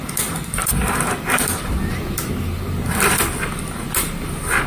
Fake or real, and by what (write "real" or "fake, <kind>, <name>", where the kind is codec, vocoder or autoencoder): real